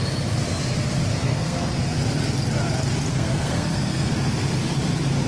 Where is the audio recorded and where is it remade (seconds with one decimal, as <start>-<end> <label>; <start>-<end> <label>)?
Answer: 0.0-1.1 recorded; 1.1-2.0 remade; 2.0-3.1 recorded; 3.1-4.1 remade; 4.1-5.3 recorded